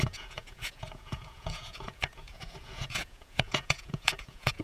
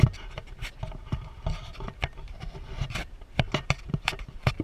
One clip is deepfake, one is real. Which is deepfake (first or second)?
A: first